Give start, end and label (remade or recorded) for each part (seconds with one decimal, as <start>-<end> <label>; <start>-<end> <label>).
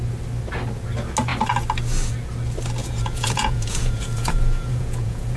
0.0-2.8 recorded; 2.8-5.4 remade